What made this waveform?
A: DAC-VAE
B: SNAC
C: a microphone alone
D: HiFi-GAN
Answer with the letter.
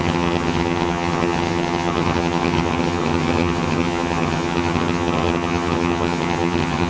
D